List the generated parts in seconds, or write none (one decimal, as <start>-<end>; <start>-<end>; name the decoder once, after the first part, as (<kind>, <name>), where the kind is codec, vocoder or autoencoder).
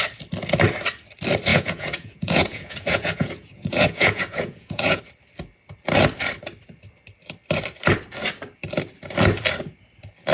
1.5-5.0 (vocoder, Vocos)